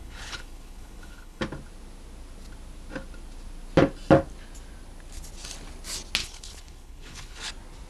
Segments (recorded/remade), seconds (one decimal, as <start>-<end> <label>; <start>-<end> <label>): 0.0-1.4 remade; 1.4-6.2 recorded; 6.2-7.5 remade; 7.5-7.9 recorded